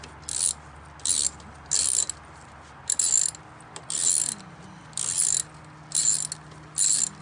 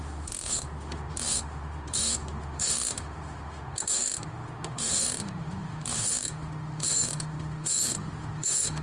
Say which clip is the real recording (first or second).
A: first